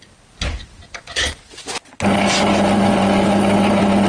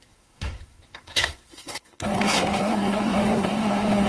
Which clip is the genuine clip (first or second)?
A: first